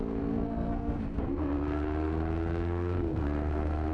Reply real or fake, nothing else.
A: fake